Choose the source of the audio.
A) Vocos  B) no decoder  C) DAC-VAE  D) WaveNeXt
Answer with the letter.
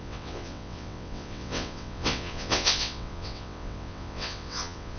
D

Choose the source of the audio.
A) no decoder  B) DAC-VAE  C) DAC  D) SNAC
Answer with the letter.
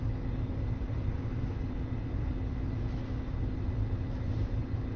A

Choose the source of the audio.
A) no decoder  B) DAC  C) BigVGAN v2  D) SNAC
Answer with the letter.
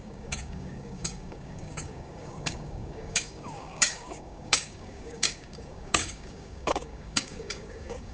B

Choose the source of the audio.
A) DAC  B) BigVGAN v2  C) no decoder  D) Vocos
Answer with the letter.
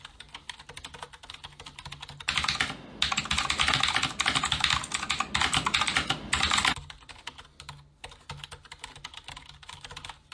C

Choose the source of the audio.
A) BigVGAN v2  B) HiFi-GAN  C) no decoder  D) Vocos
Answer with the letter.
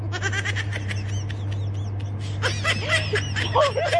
C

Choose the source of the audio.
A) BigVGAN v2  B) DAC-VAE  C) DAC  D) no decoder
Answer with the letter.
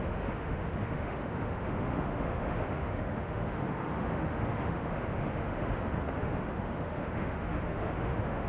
B